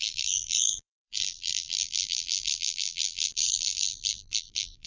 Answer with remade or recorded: remade